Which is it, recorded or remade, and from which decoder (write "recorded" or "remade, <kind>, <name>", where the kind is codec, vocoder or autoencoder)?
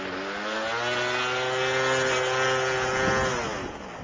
recorded